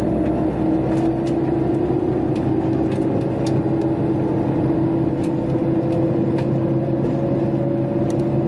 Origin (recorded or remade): recorded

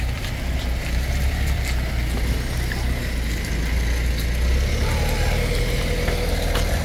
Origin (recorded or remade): recorded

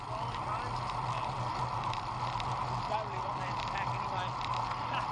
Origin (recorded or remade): recorded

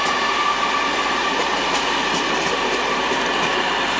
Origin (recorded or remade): remade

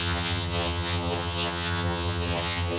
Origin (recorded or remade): remade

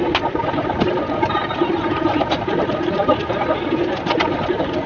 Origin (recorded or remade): recorded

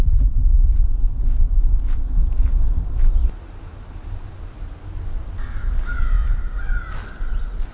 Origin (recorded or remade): recorded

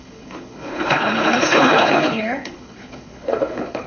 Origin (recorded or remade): remade